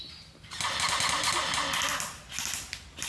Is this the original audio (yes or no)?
yes